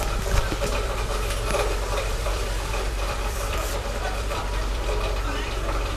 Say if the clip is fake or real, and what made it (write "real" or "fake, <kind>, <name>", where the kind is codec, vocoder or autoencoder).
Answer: fake, vocoder, BigVGAN v2